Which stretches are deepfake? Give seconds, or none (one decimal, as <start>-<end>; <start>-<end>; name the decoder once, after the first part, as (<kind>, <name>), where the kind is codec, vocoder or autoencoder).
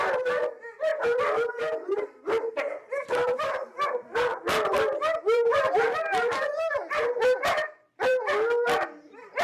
0.0-0.9 (vocoder, BigVGAN v2); 1.6-8.1; 9.0-9.4